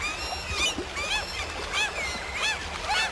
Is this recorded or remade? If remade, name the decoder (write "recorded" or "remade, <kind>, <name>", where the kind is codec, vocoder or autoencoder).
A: recorded